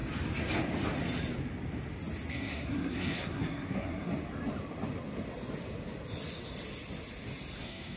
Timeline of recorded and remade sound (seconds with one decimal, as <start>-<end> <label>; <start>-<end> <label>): 0.0-2.3 recorded; 2.3-4.1 remade; 4.1-7.6 recorded; 7.6-8.0 remade